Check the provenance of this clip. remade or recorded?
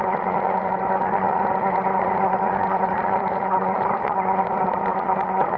remade